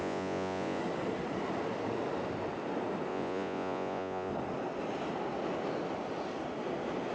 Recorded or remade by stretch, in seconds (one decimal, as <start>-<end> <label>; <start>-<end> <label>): 0.0-0.8 remade; 0.8-3.1 recorded; 3.1-4.3 remade; 4.3-7.1 recorded